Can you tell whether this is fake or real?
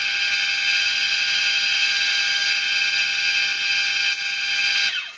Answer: real